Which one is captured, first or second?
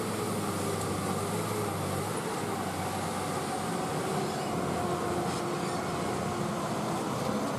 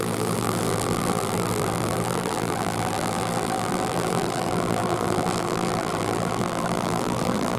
first